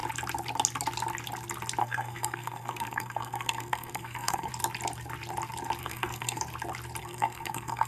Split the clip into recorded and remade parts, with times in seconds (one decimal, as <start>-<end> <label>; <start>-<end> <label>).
0.0-1.8 recorded; 1.8-4.5 remade; 4.5-5.8 recorded; 5.8-6.4 remade; 6.4-7.0 recorded; 7.0-7.9 remade